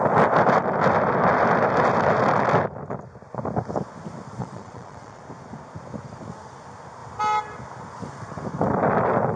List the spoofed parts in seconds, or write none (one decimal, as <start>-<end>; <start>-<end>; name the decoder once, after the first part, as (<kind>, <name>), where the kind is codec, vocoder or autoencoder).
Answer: 4.4-5.2 (vocoder, Vocos)